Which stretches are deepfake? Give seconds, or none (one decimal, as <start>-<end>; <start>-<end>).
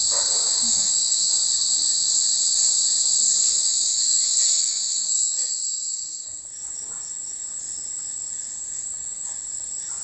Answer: 0.7-1.3; 3.5-6.4